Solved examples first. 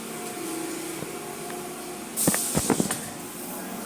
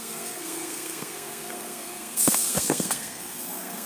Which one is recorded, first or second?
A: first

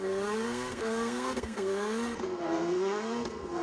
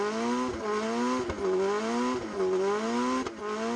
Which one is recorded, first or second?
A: second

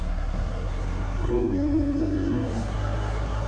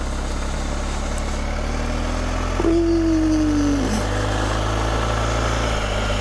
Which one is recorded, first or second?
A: second